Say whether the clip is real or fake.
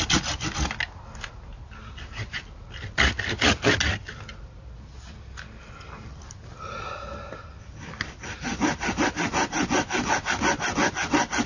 real